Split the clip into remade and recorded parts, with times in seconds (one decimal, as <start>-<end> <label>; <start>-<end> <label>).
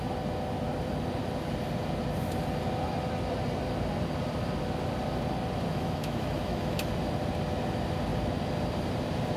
0.0-5.7 recorded; 5.7-6.9 remade; 6.9-9.4 recorded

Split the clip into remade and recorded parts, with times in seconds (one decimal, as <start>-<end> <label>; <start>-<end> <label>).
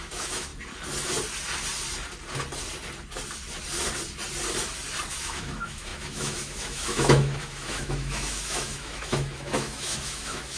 0.0-0.5 remade; 0.5-5.1 recorded; 5.1-10.6 remade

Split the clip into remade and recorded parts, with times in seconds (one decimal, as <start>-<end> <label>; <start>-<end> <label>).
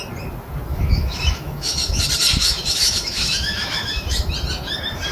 0.0-0.7 recorded; 0.7-2.0 remade; 2.0-2.4 recorded; 2.4-4.3 remade; 4.3-5.1 recorded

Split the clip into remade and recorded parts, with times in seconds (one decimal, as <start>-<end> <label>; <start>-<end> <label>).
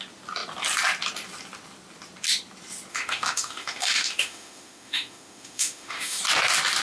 0.0-2.9 recorded; 2.9-6.2 remade; 6.2-6.8 recorded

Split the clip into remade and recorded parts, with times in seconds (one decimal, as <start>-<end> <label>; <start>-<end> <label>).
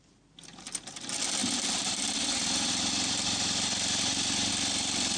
0.0-5.2 recorded